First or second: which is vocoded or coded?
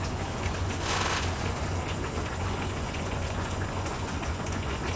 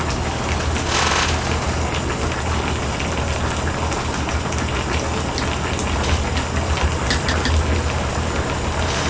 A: first